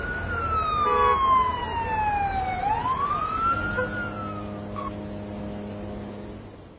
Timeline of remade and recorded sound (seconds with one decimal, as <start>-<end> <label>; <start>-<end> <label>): 0.0-6.8 recorded